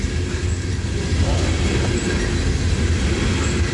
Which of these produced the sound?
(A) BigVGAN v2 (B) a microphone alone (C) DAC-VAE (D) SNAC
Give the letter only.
B